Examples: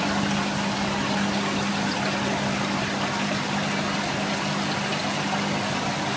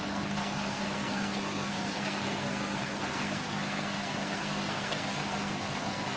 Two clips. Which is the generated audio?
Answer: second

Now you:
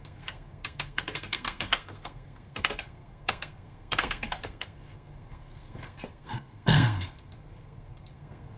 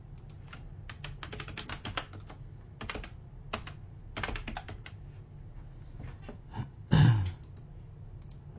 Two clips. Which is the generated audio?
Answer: first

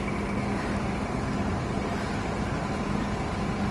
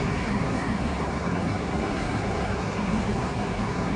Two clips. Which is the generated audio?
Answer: second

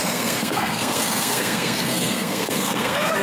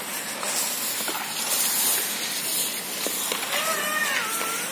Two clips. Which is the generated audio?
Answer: first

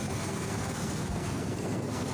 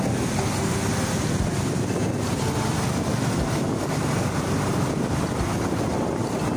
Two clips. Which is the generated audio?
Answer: first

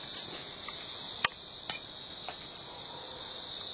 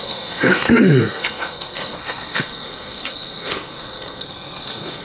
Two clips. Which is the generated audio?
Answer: second